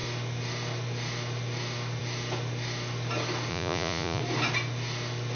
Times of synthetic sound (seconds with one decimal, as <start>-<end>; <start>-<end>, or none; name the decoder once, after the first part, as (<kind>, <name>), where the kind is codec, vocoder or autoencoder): 3.5-4.2 (vocoder, Vocos)